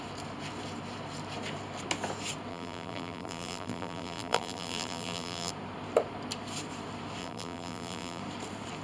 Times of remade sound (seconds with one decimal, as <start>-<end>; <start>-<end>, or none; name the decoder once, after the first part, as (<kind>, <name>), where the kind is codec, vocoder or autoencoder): 2.5-5.5 (vocoder, BigVGAN v2); 7.2-8.2

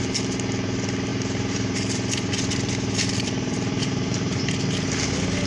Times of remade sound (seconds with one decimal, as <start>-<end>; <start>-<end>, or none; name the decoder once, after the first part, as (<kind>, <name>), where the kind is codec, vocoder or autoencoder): 1.1-4.4 (vocoder, BigVGAN v2)